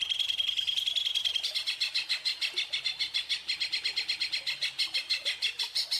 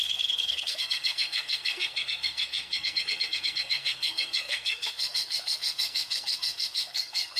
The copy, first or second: second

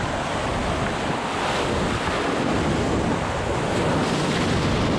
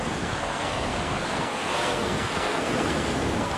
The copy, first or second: second